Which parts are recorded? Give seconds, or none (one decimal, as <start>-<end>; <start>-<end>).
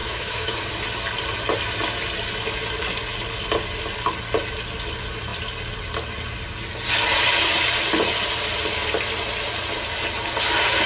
0.7-10.9